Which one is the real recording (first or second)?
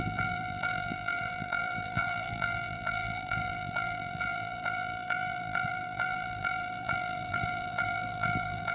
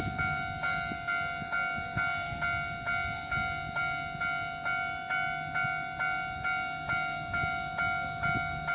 second